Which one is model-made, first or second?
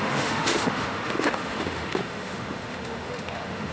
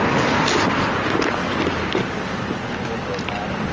first